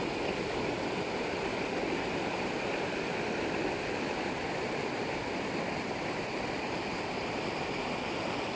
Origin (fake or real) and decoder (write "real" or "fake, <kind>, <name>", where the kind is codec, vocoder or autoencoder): fake, vocoder, BigVGAN v2